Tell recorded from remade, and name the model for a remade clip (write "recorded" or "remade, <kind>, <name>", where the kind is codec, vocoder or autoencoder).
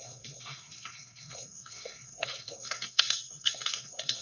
remade, codec, SNAC